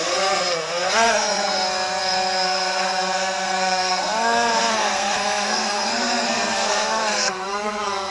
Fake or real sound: fake